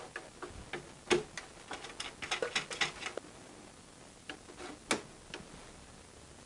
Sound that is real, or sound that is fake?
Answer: real